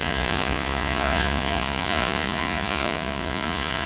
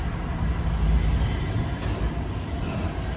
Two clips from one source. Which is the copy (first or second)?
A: first